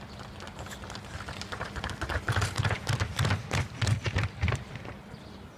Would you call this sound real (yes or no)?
yes